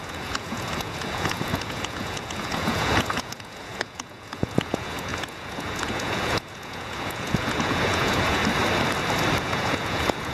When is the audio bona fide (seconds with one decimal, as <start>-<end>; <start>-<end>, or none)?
8.4-9.4